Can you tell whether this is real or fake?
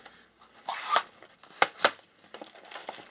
real